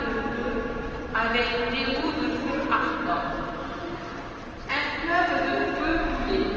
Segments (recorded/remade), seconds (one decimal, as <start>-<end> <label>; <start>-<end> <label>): 0.0-6.6 recorded